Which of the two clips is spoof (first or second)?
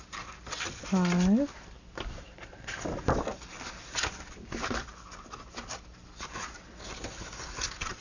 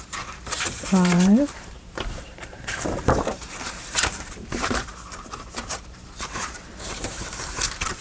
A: second